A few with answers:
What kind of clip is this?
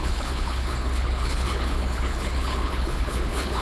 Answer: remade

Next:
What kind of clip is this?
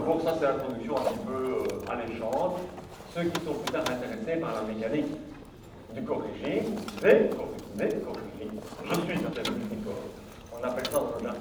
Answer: recorded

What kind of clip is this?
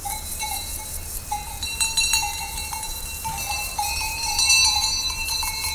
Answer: remade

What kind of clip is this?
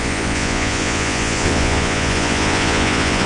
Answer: remade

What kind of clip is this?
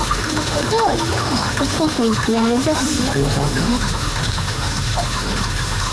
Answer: remade